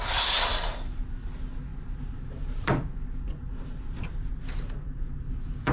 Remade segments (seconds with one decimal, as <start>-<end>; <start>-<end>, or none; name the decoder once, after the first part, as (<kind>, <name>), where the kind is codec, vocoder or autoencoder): none